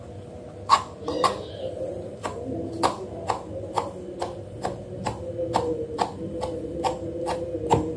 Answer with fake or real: real